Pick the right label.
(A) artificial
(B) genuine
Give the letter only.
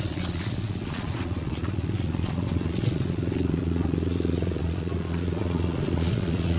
A